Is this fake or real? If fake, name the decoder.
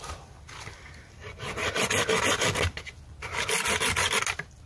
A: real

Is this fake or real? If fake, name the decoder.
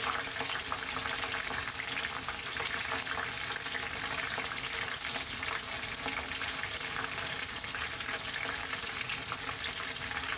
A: real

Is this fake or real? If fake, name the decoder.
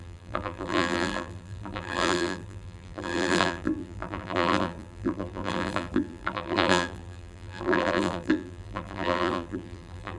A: fake, vocoder, BigVGAN v2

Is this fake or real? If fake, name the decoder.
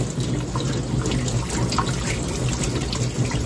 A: real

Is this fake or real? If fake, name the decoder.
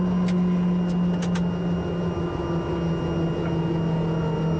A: real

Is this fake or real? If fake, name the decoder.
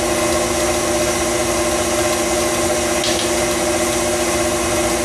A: real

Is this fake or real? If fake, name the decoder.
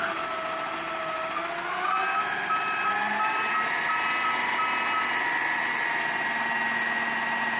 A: real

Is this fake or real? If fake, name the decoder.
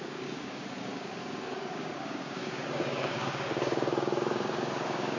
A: fake, codec, DAC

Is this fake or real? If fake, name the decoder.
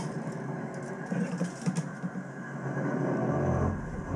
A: fake, vocoder, BigVGAN v2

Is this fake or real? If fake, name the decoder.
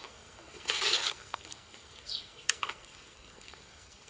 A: fake, codec, SNAC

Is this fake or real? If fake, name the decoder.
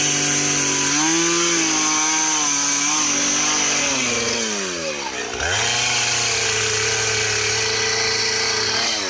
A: real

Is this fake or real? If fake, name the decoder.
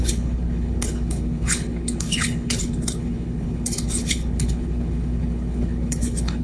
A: fake, codec, HILCodec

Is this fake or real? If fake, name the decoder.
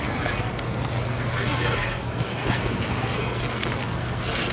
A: fake, codec, SNAC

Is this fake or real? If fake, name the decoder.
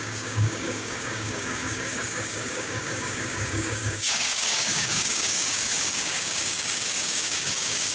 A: fake, codec, DAC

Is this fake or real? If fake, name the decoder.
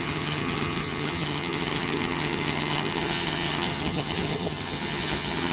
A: fake, vocoder, HiFi-GAN